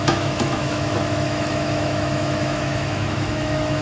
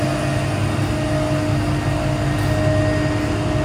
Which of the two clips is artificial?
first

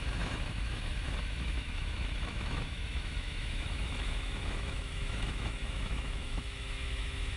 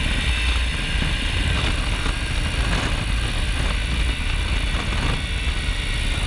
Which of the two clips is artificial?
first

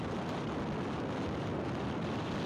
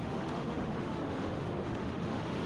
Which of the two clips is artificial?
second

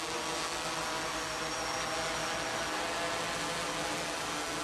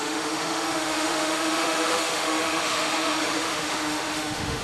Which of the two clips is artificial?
second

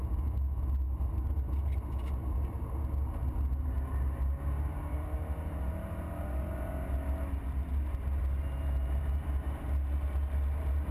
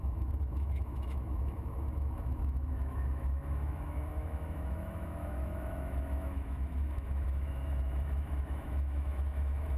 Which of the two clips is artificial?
second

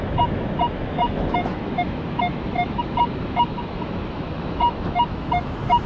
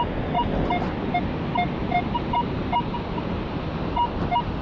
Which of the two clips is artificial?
first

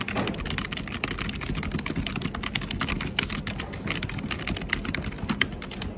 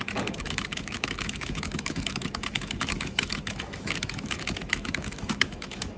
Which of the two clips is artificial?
second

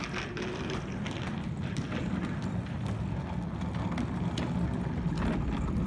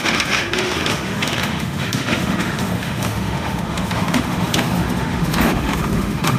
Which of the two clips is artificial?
second